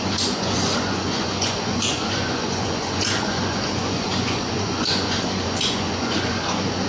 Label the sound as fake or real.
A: fake